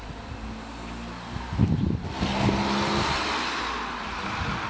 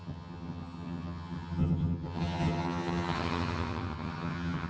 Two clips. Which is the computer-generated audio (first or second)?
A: second